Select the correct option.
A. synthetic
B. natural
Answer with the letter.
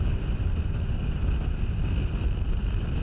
B